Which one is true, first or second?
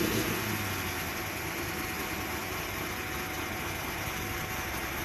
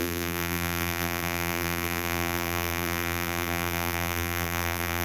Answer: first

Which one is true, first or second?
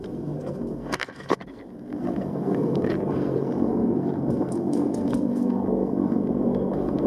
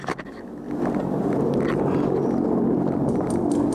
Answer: second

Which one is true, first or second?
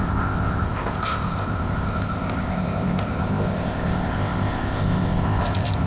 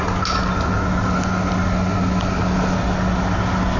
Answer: second